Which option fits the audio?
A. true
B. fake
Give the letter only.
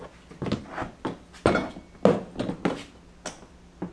A